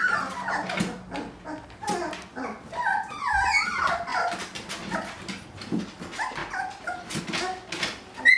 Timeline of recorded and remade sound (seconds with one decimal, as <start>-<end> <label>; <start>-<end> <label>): 0.0-8.4 recorded